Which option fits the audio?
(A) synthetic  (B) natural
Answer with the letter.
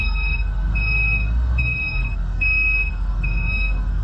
A